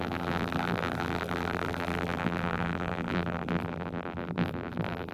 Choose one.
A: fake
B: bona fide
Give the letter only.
A